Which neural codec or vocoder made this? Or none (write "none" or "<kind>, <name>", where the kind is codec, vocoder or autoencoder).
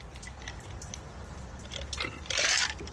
none